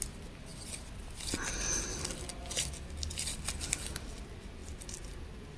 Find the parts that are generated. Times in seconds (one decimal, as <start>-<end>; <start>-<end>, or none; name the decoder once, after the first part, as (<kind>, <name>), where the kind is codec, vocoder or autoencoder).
none